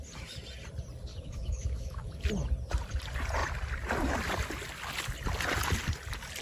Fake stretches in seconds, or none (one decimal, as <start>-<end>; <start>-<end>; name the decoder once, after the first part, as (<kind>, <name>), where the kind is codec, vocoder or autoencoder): 1.1-2.2 (autoencoder, DAC-VAE)